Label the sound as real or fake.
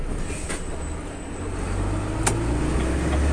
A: real